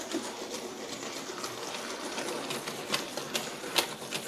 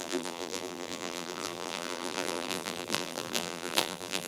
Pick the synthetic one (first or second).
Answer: second